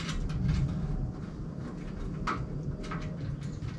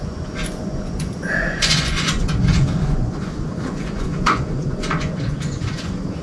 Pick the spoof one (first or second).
second